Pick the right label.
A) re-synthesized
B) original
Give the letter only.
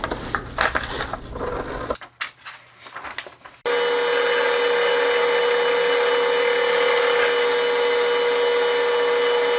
B